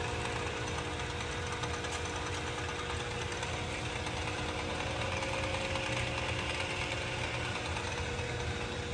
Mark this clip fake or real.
real